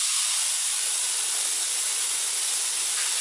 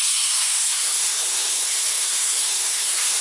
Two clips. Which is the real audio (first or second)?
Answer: first